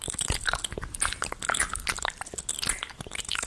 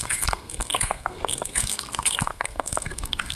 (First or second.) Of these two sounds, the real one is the first